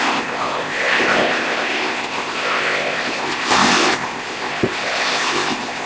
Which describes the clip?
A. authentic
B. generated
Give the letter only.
B